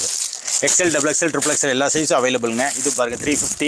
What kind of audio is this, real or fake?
real